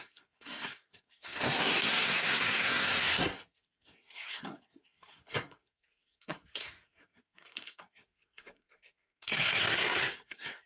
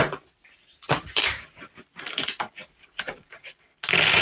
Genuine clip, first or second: second